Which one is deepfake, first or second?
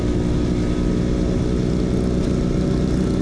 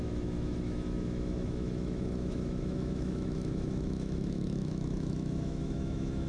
second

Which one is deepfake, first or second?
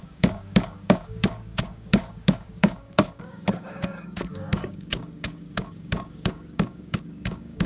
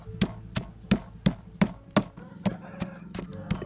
first